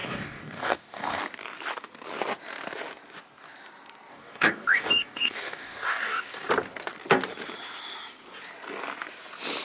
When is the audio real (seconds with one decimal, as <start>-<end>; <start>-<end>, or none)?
1.2-4.1; 6.5-9.6